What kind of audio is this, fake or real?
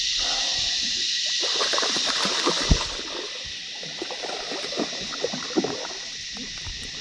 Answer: real